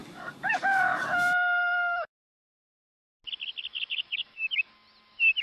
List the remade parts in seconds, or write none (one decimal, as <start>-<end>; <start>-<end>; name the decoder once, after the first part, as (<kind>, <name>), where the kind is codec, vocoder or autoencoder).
0.0-3.2 (codec, DAC); 3.7-4.7